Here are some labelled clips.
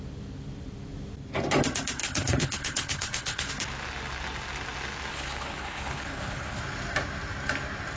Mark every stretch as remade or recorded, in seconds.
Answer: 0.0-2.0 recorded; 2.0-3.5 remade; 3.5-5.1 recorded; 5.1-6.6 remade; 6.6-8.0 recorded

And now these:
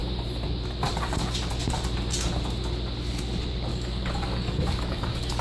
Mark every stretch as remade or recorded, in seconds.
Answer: 0.0-3.7 recorded; 3.7-5.4 remade